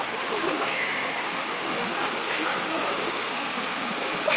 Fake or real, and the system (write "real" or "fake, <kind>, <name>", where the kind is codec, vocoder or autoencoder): fake, autoencoder, DAC-VAE